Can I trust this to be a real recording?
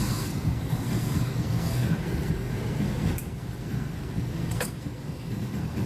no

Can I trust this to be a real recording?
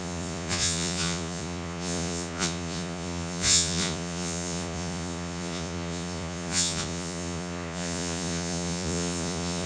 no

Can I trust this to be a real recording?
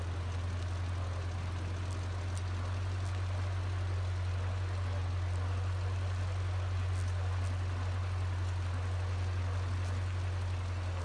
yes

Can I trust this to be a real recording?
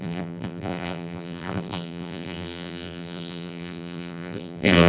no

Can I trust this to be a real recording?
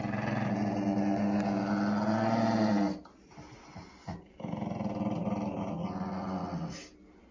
yes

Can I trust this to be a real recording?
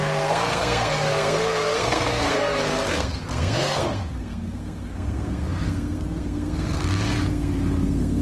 no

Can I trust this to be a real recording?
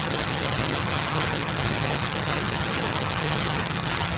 no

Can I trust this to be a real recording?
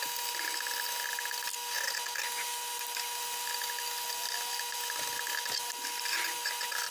yes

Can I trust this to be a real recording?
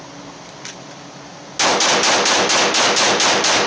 yes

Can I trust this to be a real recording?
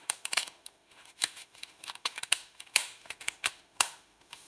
no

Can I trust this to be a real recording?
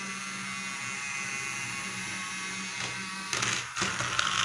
yes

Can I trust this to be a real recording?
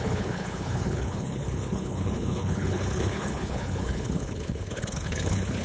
no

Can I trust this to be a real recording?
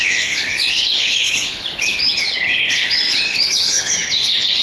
no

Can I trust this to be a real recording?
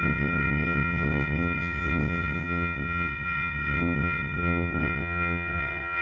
no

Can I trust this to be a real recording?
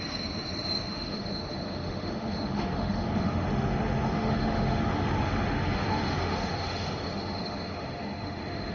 no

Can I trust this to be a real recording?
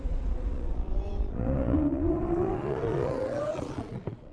no